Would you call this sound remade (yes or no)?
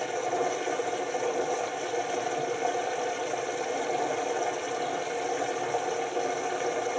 no